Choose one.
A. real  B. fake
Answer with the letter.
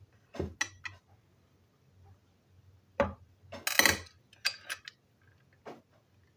A